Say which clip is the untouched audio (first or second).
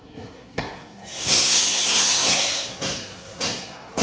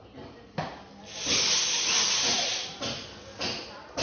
second